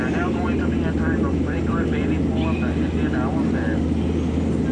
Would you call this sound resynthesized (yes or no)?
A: no